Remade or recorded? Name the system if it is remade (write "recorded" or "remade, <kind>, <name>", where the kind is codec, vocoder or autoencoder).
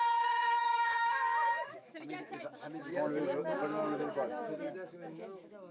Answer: remade, autoencoder, DAC-VAE